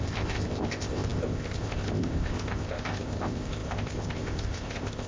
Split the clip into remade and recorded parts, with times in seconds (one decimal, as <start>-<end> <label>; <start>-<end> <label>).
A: 0.0-5.1 remade